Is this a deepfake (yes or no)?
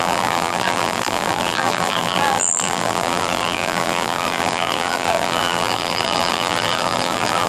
yes